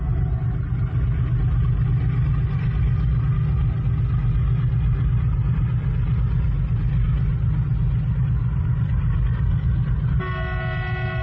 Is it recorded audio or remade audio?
recorded